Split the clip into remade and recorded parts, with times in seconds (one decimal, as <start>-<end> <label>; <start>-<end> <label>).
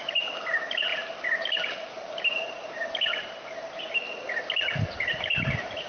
0.0-5.9 recorded